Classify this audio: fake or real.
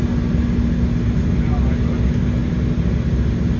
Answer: real